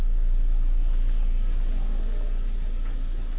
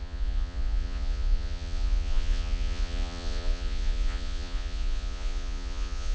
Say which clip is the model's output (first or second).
second